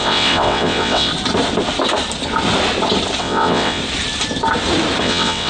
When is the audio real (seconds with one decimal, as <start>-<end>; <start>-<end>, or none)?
1.1-3.2; 3.8-5.0